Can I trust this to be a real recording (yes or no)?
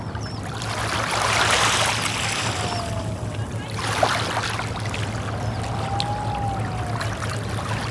yes